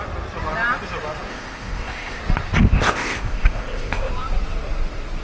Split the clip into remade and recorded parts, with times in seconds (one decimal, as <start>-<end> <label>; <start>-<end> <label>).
0.0-1.3 recorded; 1.3-2.2 remade; 2.2-2.6 recorded; 2.6-4.1 remade; 4.1-5.2 recorded

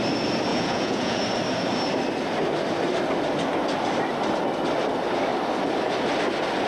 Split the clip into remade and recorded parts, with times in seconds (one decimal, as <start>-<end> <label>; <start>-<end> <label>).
0.0-0.5 recorded; 0.5-1.2 remade; 1.2-6.7 recorded